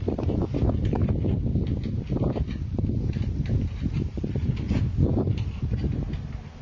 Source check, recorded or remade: recorded